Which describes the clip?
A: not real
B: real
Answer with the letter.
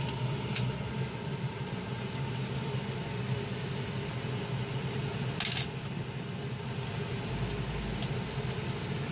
B